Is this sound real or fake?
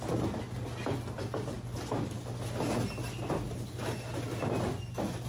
real